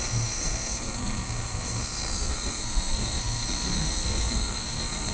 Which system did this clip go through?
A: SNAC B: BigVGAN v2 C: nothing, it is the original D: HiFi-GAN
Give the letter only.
A